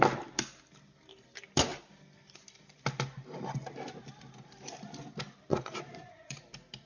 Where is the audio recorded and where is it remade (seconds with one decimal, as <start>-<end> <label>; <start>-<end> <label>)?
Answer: 0.0-5.5 recorded; 5.5-6.4 remade; 6.4-6.9 recorded